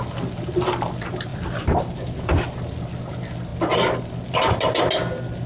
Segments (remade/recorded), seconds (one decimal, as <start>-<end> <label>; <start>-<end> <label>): 0.0-1.3 recorded; 1.3-2.4 remade; 2.4-5.5 recorded